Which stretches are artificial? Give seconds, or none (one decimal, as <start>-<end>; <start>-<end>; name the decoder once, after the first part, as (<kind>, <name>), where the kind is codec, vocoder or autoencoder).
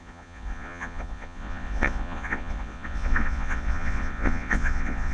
0.0-5.1 (vocoder, Vocos)